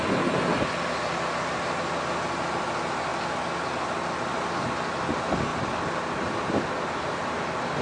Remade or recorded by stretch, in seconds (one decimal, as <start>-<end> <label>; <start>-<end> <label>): 0.0-7.8 recorded